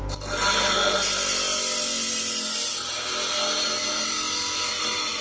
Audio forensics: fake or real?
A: real